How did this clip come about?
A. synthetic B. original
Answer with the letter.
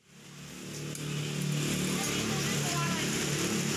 B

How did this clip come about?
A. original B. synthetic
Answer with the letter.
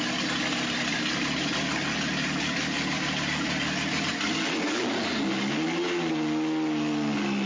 A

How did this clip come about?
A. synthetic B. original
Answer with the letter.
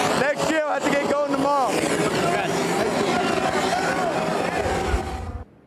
B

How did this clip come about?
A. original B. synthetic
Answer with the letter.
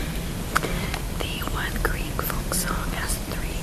A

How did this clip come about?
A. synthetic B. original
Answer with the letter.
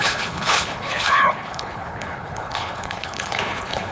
A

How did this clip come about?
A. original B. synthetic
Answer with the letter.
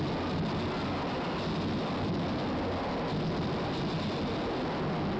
A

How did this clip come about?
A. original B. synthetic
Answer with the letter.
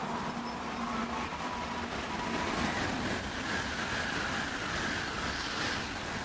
B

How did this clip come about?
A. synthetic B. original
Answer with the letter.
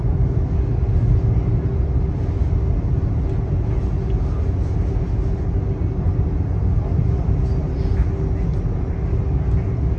B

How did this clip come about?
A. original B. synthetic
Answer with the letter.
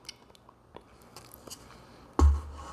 A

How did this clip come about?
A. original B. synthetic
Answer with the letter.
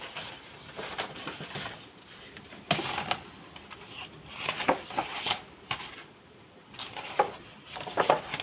A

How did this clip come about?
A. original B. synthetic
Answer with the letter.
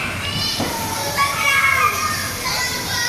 A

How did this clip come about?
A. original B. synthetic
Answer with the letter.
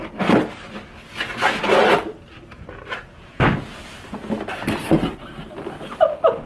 A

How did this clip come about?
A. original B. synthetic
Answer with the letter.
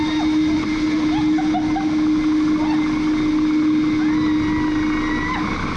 A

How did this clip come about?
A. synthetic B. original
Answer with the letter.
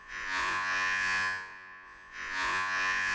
A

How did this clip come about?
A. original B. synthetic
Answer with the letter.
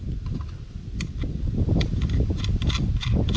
A